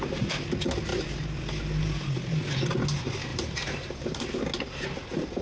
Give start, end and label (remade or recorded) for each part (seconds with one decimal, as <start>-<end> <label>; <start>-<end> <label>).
0.0-3.3 recorded; 3.3-4.2 remade; 4.2-5.4 recorded